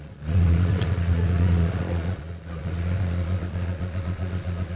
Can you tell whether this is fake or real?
fake